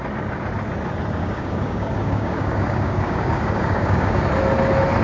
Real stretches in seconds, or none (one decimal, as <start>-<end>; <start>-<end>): 0.0-1.2; 4.2-5.0